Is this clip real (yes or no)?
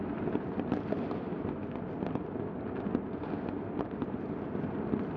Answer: yes